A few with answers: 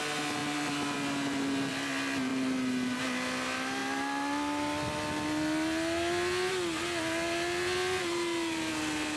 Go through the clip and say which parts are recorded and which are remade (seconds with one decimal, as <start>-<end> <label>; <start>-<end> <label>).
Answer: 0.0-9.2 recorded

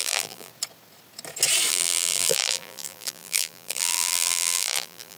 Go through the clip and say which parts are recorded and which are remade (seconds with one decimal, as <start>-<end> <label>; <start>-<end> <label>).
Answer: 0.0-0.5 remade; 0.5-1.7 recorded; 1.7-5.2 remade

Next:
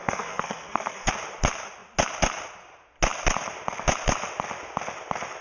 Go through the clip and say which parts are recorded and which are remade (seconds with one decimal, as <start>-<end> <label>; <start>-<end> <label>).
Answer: 0.0-1.1 remade; 1.1-5.4 recorded